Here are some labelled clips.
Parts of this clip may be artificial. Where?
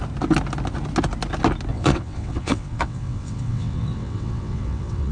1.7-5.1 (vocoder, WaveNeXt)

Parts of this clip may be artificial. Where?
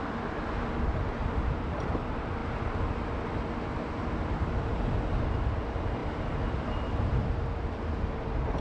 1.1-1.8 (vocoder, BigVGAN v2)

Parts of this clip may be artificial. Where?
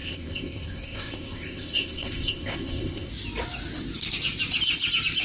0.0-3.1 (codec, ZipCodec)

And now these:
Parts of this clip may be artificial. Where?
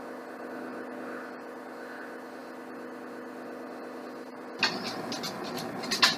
none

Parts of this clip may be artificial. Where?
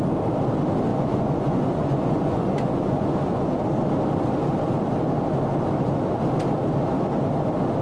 0.9-3.4 (vocoder, Vocos)